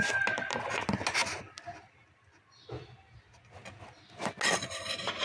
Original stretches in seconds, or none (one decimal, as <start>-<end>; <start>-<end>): 0.0-5.2